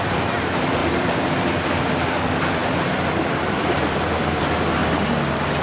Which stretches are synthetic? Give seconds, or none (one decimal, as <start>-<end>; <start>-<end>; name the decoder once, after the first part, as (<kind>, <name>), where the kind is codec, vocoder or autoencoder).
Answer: 0.0-2.6 (vocoder, BigVGAN v2); 3.5-4.8

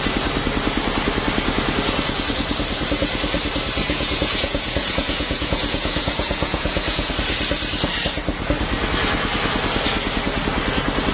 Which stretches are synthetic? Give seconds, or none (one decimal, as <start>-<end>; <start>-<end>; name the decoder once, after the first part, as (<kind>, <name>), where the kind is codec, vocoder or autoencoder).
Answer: 3.8-7.1 (vocoder, Vocos)

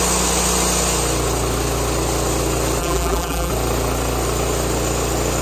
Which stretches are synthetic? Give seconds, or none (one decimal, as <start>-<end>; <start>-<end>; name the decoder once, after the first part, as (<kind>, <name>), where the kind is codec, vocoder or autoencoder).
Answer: 2.8-3.5 (vocoder, BigVGAN v2)

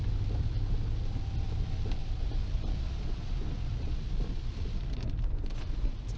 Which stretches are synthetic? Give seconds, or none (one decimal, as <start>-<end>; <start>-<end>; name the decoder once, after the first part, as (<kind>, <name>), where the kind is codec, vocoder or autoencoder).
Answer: 2.0-5.7 (vocoder, BigVGAN v2)

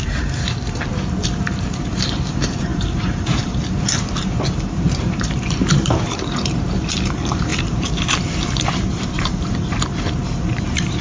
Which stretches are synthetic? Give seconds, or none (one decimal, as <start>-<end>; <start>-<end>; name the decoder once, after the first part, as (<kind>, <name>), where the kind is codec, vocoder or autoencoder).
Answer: 0.0-11.0 (vocoder, BigVGAN v2)

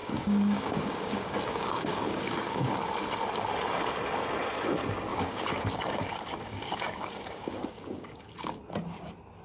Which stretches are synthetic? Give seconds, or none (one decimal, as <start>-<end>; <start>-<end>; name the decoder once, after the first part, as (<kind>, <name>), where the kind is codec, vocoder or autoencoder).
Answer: 0.0-2.8 (codec, DAC); 5.1-8.6

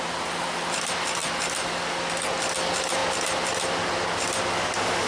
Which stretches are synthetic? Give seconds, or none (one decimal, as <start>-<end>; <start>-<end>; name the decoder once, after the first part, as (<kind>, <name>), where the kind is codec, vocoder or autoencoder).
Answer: none